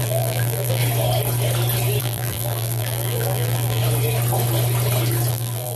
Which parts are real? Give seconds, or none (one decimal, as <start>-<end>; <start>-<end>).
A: 0.8-2.0; 3.8-5.3